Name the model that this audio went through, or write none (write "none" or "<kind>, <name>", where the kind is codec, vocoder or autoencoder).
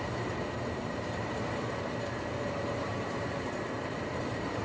vocoder, BigVGAN v2